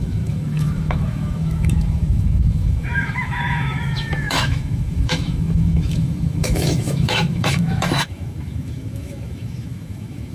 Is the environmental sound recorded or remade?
remade